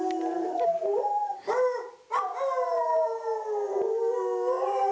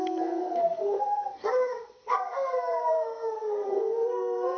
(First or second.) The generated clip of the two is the second